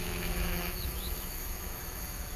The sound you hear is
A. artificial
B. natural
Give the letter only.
A